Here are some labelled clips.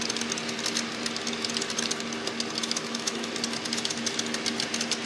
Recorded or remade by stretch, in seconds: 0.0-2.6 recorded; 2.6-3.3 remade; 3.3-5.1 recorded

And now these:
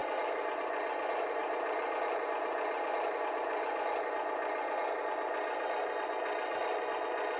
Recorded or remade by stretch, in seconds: 0.0-7.4 recorded

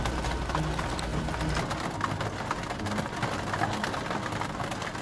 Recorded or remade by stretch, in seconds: 0.0-5.0 recorded

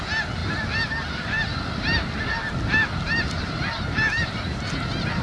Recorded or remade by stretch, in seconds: 0.0-5.2 recorded

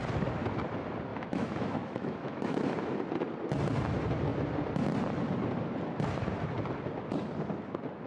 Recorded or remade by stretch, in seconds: 0.0-1.1 recorded; 1.1-2.6 remade; 2.6-8.1 recorded

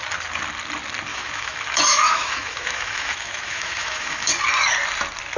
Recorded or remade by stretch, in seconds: 0.0-1.1 recorded; 1.1-4.3 remade; 4.3-5.4 recorded

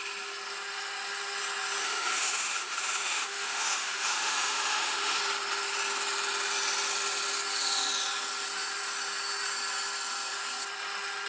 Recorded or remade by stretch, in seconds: 0.0-1.8 recorded; 1.8-5.2 remade; 5.2-11.3 recorded